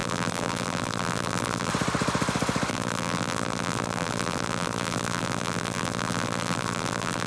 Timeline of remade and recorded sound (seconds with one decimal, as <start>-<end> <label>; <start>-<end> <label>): 0.0-1.7 remade; 1.7-2.7 recorded; 2.7-7.3 remade